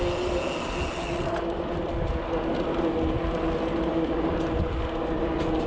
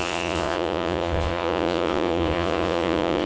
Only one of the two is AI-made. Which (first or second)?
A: second